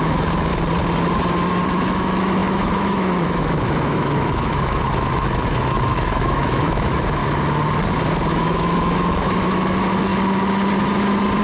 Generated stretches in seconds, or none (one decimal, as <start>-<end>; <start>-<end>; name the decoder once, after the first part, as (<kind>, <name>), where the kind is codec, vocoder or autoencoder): 0.0-0.5 (autoencoder, DAC-VAE); 1.8-7.2; 8.3-10.1